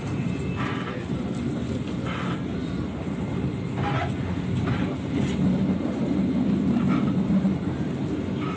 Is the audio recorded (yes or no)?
yes